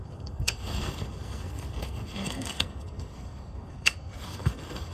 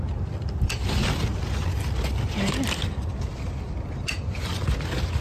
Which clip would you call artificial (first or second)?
first